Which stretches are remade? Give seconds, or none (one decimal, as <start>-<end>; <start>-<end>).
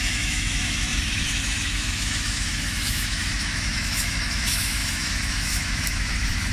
0.0-6.5